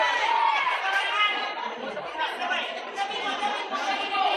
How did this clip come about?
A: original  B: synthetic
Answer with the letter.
B